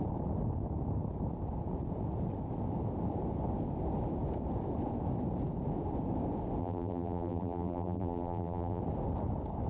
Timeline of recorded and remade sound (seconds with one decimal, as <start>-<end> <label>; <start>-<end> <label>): 0.0-6.6 recorded; 6.6-8.8 remade; 8.8-9.7 recorded